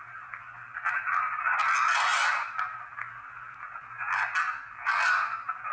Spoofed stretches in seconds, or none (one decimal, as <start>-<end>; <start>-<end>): none